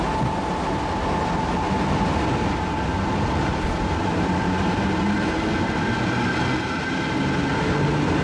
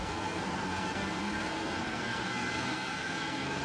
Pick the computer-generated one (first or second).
second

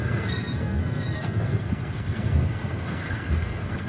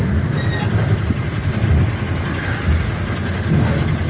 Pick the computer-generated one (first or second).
first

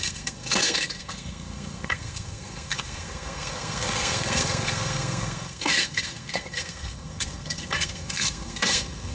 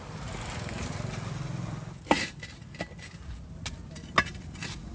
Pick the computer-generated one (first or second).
first